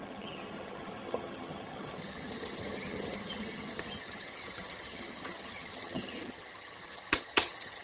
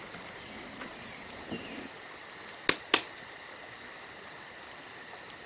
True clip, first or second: second